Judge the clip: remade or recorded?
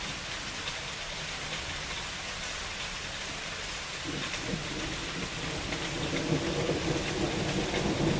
recorded